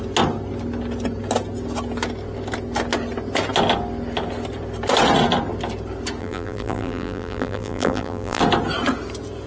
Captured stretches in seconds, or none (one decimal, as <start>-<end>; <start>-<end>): 0.0-6.2; 8.4-9.5